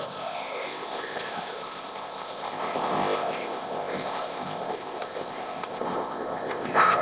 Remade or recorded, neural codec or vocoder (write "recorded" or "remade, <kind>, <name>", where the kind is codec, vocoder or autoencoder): remade, codec, ZipCodec